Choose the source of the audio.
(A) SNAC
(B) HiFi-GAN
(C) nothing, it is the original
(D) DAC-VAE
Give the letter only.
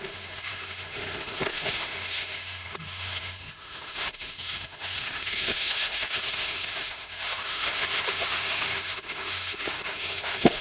D